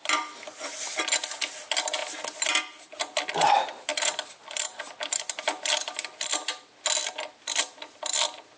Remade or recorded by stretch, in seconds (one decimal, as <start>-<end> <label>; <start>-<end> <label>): 0.0-8.6 recorded